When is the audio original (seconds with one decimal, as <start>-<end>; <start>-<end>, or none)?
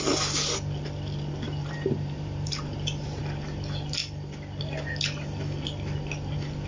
0.0-1.6; 3.2-6.7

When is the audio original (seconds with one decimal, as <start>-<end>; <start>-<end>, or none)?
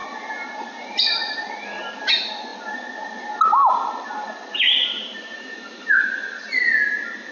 0.0-7.3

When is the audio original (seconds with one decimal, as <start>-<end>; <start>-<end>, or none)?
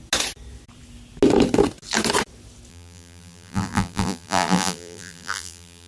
0.0-2.7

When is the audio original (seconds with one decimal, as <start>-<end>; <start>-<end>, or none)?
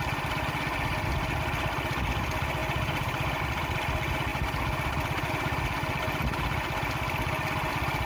0.0-2.6; 3.4-8.1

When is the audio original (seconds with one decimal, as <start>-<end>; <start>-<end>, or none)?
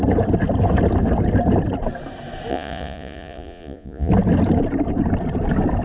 0.0-2.5; 4.1-5.8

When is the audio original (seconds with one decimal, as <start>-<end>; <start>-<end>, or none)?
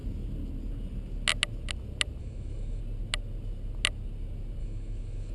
0.0-2.2; 2.8-4.6